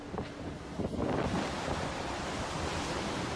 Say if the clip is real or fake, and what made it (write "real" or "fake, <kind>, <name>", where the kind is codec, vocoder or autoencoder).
real